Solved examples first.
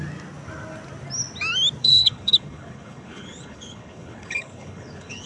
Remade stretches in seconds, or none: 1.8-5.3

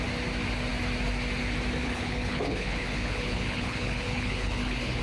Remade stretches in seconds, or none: 1.8-5.0

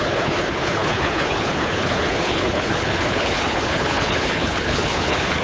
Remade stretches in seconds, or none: 0.0-5.4

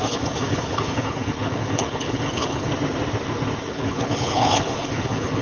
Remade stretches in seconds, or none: 0.0-2.7; 3.7-5.4

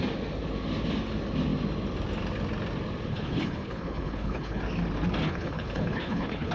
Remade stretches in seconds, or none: 3.1-4.6; 5.2-6.5